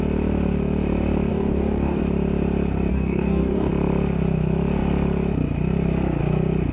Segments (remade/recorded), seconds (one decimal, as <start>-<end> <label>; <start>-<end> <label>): 0.0-1.3 recorded; 1.3-2.0 remade; 2.0-2.9 recorded; 2.9-3.7 remade; 3.7-6.7 recorded